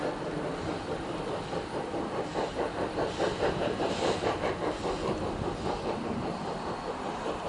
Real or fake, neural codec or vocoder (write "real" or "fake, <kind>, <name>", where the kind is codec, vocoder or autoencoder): fake, vocoder, BigVGAN v2